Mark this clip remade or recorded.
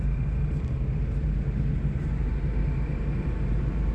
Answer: recorded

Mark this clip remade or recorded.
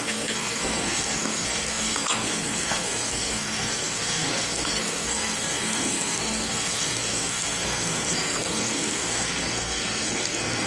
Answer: remade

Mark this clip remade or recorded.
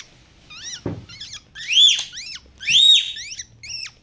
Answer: recorded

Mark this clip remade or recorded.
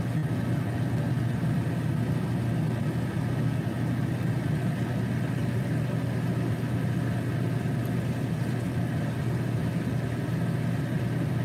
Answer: recorded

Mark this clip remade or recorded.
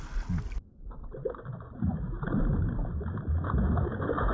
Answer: recorded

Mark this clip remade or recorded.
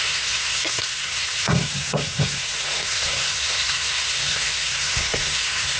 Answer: remade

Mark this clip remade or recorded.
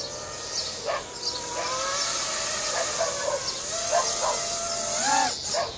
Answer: recorded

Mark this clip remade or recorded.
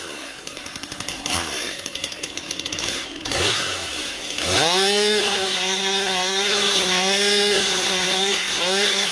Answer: remade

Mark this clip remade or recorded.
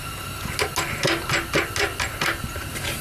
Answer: recorded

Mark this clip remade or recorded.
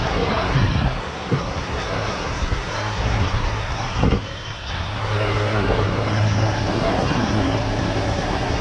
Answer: remade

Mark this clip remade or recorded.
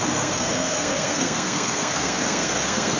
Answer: remade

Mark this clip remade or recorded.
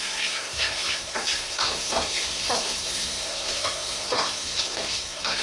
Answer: remade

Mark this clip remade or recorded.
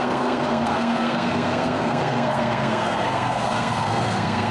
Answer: remade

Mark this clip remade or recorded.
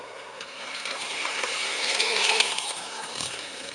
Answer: remade